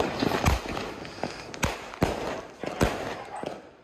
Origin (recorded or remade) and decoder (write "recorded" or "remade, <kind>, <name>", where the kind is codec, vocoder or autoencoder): recorded